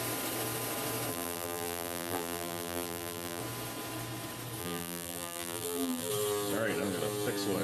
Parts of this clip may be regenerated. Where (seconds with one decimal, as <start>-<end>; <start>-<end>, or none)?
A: 1.1-3.4; 4.6-6.1